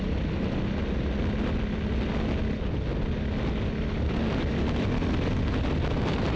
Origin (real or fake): real